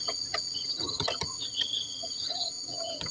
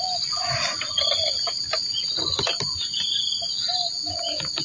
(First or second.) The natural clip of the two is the second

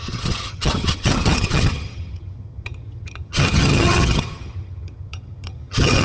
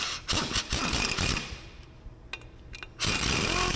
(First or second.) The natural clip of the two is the second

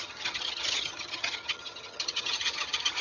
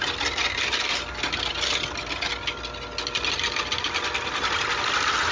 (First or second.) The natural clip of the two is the second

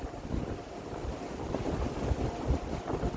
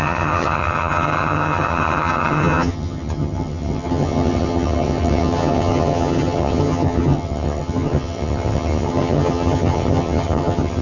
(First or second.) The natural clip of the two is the first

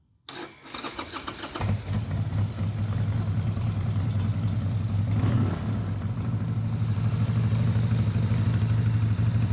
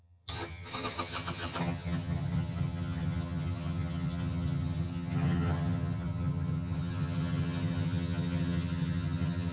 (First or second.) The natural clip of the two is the first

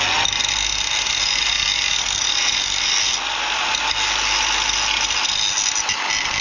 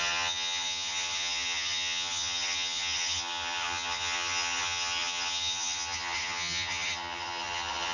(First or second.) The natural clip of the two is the first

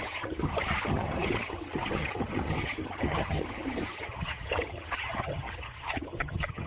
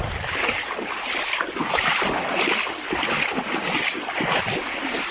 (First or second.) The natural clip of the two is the second